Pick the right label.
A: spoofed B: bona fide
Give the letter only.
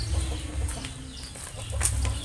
B